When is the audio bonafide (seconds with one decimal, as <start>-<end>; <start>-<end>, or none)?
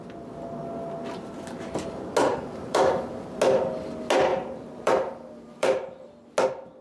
0.0-2.3; 3.1-4.3; 6.1-6.8